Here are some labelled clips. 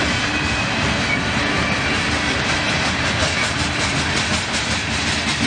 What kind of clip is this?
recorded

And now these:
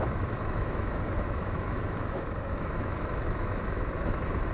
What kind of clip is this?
remade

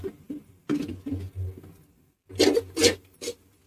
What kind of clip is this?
recorded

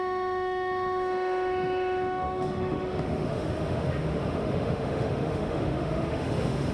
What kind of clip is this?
remade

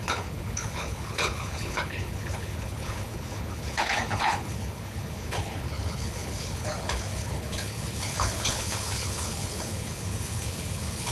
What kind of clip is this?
remade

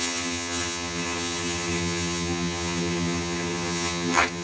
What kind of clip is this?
remade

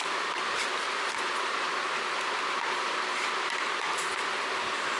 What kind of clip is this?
recorded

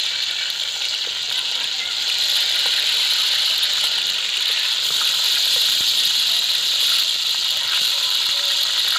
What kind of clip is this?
recorded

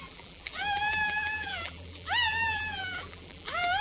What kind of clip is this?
remade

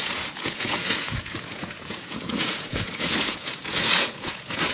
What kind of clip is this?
remade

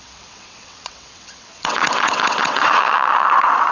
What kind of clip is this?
remade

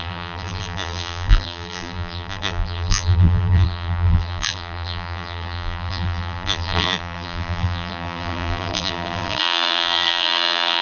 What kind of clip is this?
remade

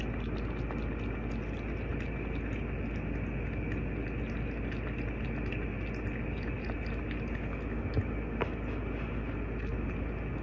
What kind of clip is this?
recorded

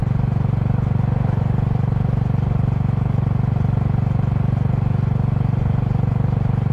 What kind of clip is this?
recorded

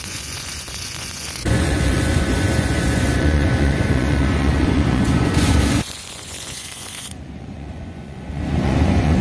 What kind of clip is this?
remade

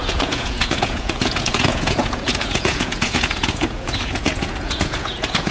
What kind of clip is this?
remade